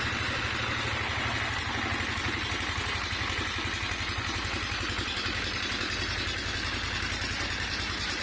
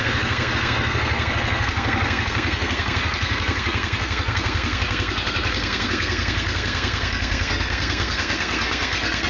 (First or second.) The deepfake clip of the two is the second